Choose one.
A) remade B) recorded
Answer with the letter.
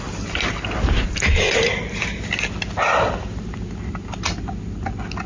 B